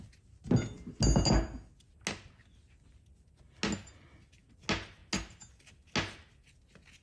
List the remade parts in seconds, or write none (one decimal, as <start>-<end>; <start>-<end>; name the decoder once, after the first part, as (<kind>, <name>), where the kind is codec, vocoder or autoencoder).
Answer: none